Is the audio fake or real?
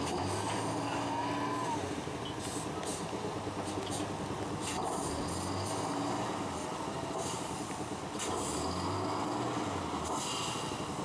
real